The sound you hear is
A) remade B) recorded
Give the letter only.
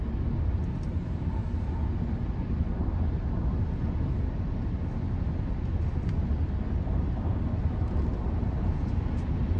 B